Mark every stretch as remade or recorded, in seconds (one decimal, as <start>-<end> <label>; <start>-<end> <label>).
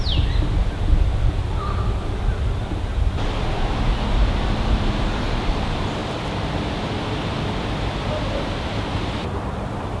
0.0-3.5 recorded; 3.5-6.0 remade; 6.0-8.2 recorded; 8.2-10.0 remade